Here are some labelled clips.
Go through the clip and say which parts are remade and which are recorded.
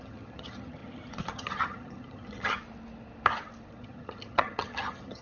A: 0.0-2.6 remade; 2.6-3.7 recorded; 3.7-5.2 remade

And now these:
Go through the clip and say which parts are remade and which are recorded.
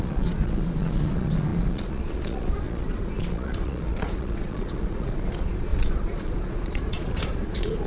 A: 0.0-7.9 remade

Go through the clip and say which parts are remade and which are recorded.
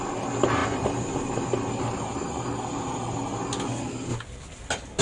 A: 0.0-5.0 recorded